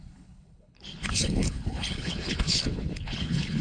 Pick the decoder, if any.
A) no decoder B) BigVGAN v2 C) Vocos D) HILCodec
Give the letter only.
D